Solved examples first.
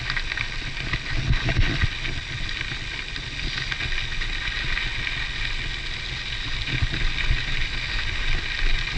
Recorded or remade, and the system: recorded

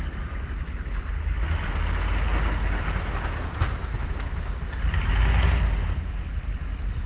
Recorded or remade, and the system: recorded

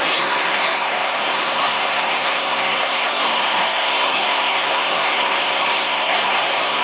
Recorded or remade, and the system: remade, codec, SNAC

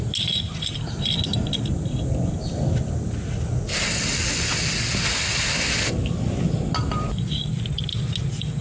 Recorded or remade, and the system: recorded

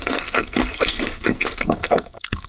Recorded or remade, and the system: remade, codec, SNAC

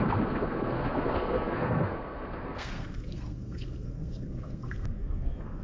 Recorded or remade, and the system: remade, codec, SNAC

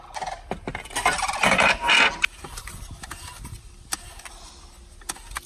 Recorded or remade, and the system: recorded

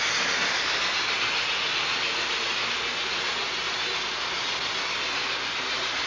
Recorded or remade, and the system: recorded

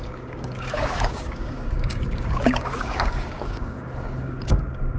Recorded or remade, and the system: remade, codec, DAC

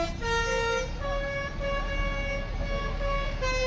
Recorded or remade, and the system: recorded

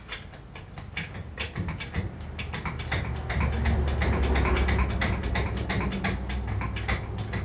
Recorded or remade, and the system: recorded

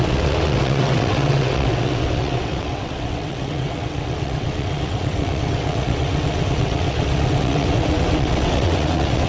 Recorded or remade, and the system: remade, vocoder, WaveNeXt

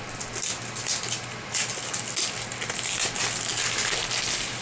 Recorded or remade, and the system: recorded